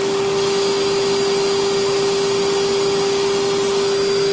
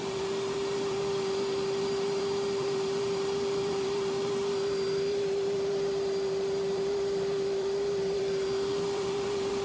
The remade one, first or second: second